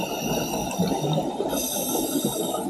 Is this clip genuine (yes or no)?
yes